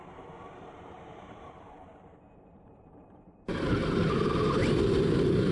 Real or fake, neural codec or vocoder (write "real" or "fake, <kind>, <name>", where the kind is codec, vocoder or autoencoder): fake, vocoder, BigVGAN v2